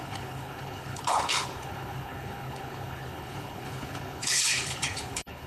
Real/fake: fake